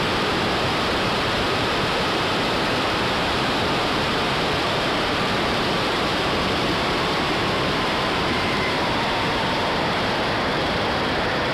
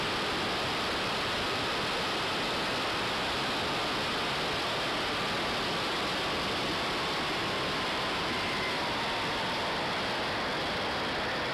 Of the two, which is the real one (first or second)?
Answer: second